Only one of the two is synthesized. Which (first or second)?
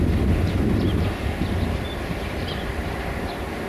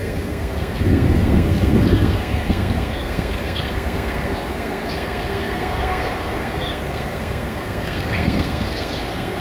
second